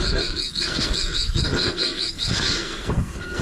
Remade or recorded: remade